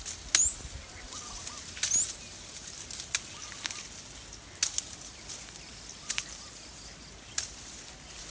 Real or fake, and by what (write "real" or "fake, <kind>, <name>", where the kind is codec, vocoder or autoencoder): real